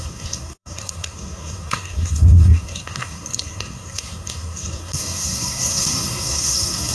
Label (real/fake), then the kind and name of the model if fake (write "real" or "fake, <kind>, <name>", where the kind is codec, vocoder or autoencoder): fake, codec, SNAC